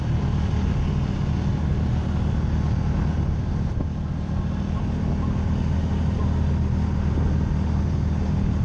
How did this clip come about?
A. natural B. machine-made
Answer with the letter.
A